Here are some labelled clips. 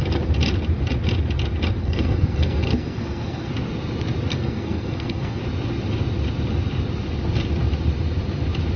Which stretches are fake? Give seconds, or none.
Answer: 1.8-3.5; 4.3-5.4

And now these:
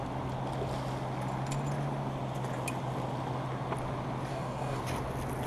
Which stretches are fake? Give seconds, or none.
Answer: 4.3-4.8

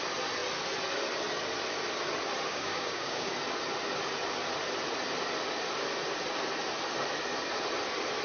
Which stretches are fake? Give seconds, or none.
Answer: 2.5-3.3

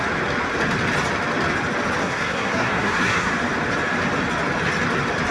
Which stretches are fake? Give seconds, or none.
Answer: 2.0-3.3

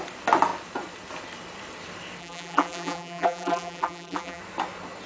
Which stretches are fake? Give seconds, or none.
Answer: 2.2-4.4

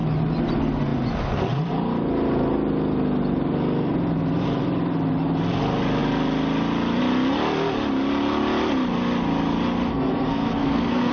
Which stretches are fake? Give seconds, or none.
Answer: 9.9-11.1

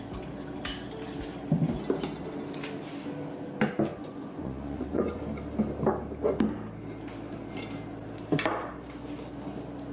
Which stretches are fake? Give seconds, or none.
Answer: 3.9-5.2

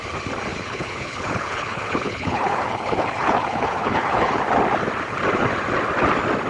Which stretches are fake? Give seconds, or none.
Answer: 0.5-4.4